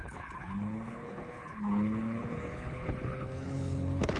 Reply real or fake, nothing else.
fake